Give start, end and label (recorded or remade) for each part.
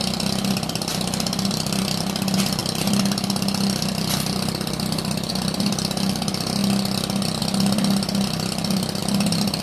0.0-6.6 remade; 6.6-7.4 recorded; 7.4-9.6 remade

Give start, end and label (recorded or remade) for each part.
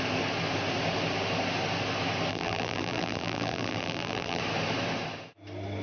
0.0-2.3 recorded; 2.3-4.4 remade; 4.4-5.8 recorded